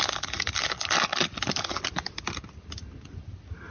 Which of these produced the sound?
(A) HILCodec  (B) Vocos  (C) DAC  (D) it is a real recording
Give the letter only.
D